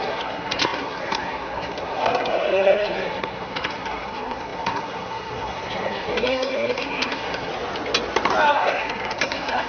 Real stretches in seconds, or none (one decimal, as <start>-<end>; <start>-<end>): 7.5-8.5